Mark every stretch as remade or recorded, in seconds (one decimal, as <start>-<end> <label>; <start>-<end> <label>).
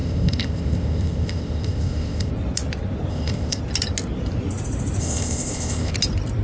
0.0-2.3 remade; 2.3-3.1 recorded; 3.1-3.6 remade; 3.6-5.0 recorded; 5.0-5.9 remade; 5.9-6.4 recorded